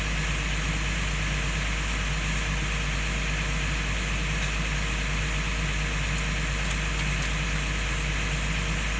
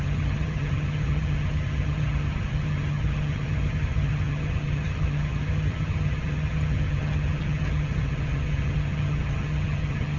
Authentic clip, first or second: first